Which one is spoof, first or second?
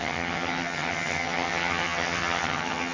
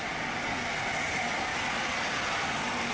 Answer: first